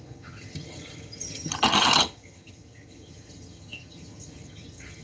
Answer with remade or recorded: remade